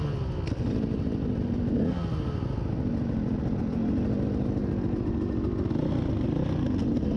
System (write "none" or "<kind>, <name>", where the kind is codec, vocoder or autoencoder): none